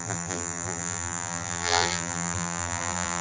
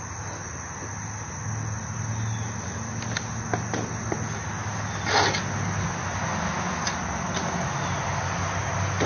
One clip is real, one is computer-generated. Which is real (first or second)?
second